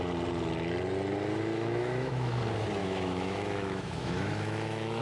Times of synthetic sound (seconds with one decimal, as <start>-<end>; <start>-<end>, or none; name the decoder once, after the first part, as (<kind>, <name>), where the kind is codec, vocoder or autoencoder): 1.5-2.4 (autoencoder, DAC-VAE); 2.8-5.0